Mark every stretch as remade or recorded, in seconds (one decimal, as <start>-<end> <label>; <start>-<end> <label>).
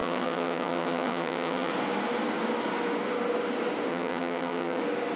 0.0-1.7 remade; 1.7-3.9 recorded; 3.9-4.8 remade; 4.8-5.2 recorded